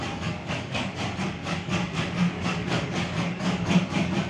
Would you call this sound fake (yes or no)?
yes